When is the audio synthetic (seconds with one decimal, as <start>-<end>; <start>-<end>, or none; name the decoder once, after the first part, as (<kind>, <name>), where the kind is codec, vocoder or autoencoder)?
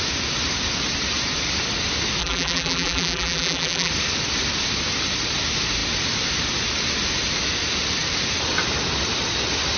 2.2-3.9 (vocoder, BigVGAN v2)